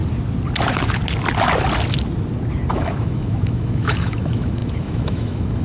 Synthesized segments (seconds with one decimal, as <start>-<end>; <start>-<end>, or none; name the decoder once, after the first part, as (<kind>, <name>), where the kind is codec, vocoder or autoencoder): 2.7-5.6 (autoencoder, DAC-VAE)